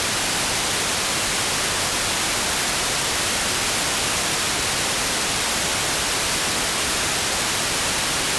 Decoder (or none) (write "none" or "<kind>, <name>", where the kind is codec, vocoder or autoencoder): none